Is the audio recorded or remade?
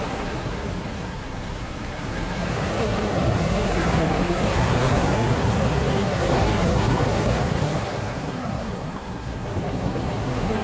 remade